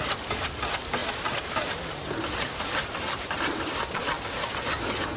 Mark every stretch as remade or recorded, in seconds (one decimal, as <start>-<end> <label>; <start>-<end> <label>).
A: 0.0-1.0 recorded; 1.0-4.1 remade; 4.1-5.2 recorded